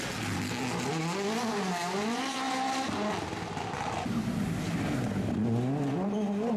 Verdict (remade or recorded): recorded